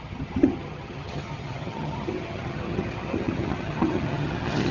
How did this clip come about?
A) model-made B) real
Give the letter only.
A